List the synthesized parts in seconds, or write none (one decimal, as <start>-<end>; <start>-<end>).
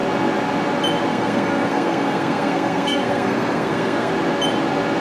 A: 1.1-4.1